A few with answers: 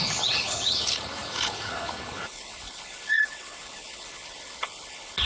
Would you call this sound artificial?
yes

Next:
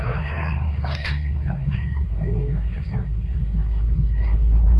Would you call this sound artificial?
yes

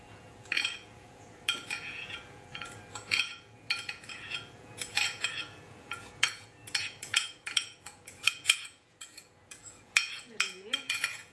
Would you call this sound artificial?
yes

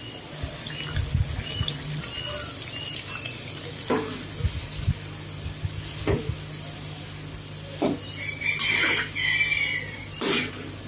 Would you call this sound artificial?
no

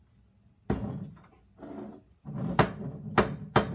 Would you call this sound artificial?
no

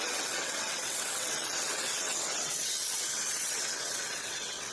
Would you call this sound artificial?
yes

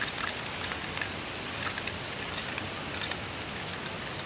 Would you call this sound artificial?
no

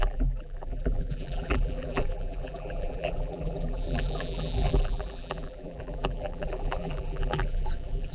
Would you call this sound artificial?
yes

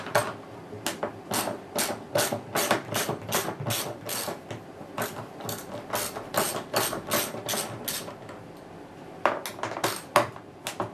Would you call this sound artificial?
no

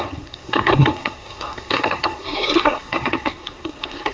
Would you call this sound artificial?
yes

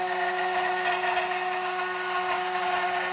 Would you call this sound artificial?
no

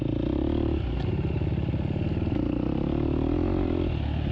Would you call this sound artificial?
no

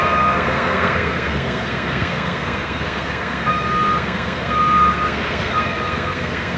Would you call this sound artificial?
yes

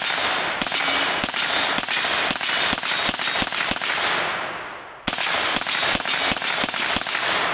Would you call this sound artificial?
no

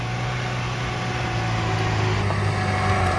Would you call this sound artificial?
no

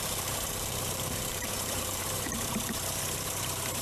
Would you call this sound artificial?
yes